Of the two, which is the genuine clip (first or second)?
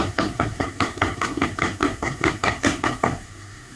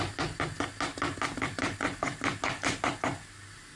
second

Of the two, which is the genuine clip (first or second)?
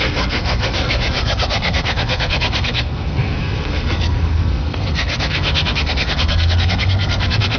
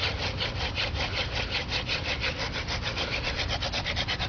second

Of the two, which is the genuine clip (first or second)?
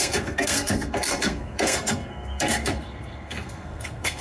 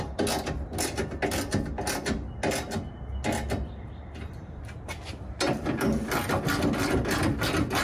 second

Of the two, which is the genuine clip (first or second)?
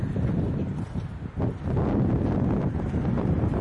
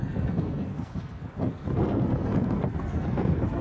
first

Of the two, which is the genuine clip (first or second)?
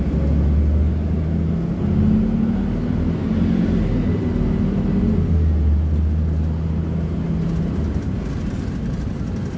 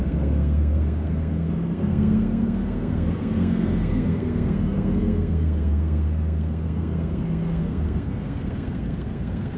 first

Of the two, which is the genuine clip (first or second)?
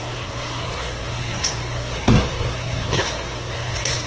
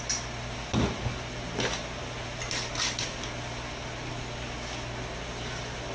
second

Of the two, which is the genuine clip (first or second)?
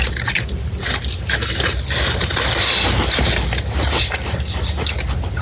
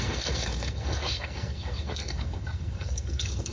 first